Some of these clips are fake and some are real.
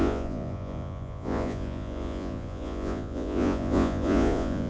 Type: fake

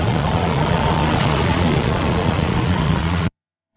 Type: fake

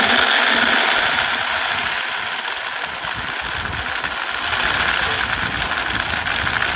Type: real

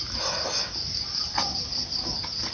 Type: real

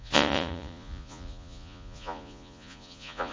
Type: fake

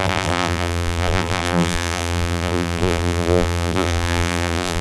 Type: fake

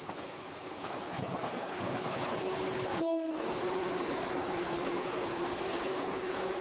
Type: fake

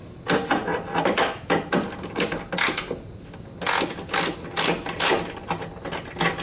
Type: real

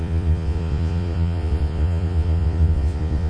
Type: fake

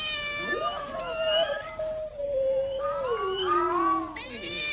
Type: real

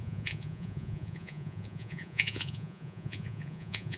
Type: fake